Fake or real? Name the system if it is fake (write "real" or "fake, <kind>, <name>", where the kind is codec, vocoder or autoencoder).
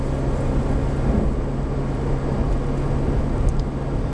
real